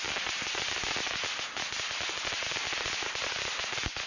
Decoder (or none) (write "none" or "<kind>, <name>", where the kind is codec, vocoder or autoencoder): none